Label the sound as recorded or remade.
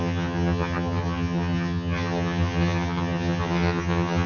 remade